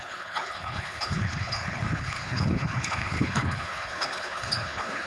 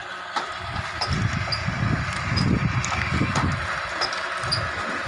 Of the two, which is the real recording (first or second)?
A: second